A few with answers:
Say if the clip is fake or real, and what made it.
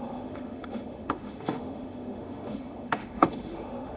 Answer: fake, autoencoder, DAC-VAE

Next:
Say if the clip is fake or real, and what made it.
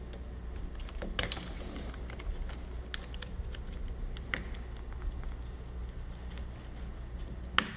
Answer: real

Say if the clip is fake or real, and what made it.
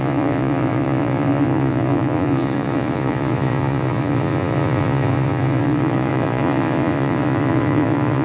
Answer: fake, vocoder, Vocos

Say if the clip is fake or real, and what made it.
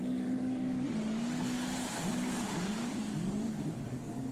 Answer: fake, codec, DAC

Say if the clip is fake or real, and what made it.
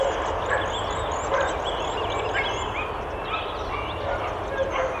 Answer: real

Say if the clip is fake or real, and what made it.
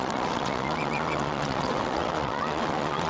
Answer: fake, vocoder, WaveNeXt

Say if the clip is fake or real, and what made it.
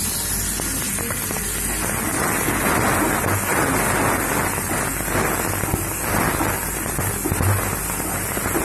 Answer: real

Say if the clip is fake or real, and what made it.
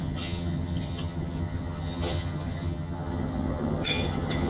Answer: fake, vocoder, HiFi-GAN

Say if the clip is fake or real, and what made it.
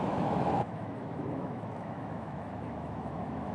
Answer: fake, autoencoder, DAC-VAE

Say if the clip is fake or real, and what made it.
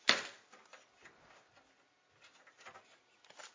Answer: real